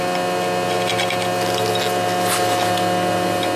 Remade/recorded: recorded